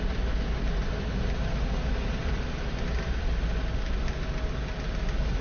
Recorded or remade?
recorded